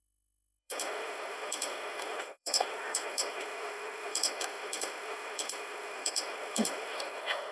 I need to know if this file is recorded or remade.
remade